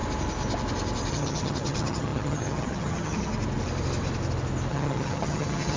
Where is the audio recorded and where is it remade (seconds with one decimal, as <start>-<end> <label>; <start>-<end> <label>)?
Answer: 0.0-1.1 recorded; 1.1-3.3 remade; 3.3-4.7 recorded; 4.7-5.8 remade